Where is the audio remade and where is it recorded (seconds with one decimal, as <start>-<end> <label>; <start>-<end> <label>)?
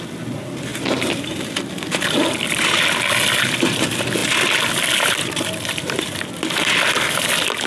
0.0-7.7 recorded